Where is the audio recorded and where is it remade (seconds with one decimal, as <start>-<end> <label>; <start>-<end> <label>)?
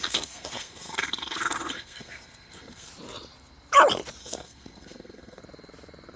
0.0-2.9 remade; 2.9-4.2 recorded; 4.2-5.4 remade; 5.4-6.2 recorded